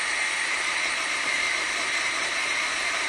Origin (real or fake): fake